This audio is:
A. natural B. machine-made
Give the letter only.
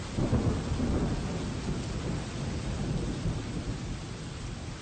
A